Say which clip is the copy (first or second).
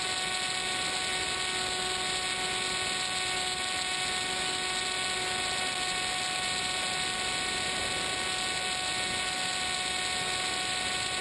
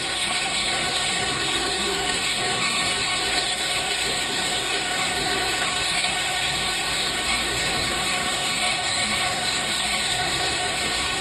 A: second